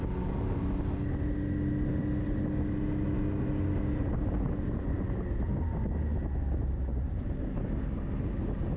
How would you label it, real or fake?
real